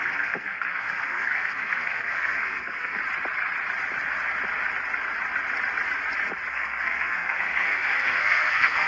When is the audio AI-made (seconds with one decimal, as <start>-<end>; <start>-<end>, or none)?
0.0-3.0; 6.5-8.9